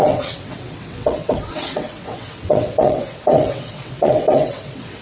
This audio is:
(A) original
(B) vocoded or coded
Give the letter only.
B